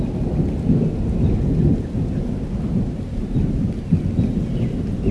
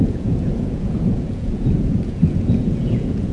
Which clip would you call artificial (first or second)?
second